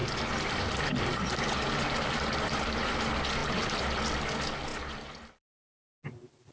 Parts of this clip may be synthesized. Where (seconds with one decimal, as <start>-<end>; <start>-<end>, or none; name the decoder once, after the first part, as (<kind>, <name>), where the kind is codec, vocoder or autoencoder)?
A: 0.0-3.0 (vocoder, BigVGAN v2); 3.4-4.1; 4.7-6.0